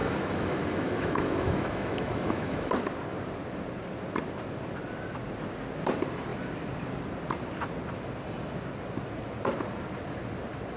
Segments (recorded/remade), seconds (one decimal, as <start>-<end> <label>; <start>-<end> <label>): 0.0-2.7 remade; 2.7-10.8 recorded